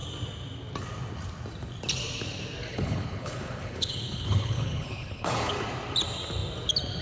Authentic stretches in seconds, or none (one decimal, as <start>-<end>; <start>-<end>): 0.0-2.7; 5.5-7.0